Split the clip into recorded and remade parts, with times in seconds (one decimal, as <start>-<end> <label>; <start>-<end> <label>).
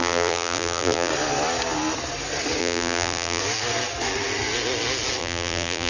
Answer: 0.0-1.1 remade; 1.1-2.6 recorded; 2.6-3.4 remade; 3.4-5.2 recorded; 5.2-5.9 remade